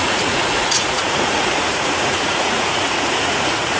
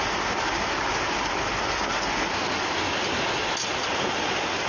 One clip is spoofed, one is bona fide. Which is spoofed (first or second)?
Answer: first